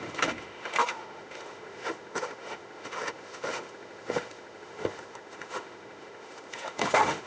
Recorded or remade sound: remade